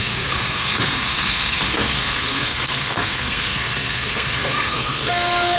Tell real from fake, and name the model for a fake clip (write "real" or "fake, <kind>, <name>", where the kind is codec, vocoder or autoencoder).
fake, codec, SNAC